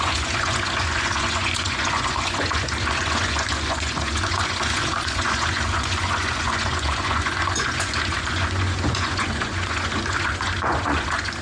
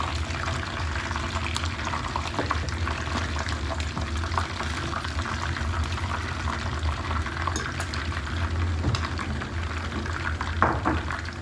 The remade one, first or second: first